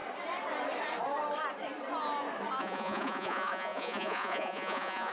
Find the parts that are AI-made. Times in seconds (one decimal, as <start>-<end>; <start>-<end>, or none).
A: 2.6-5.1